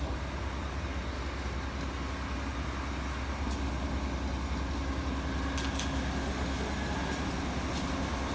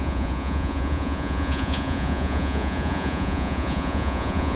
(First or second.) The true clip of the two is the first